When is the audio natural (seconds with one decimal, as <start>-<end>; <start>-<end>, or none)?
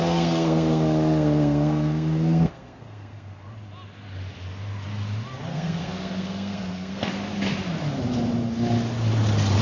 3.5-5.5; 7.1-9.6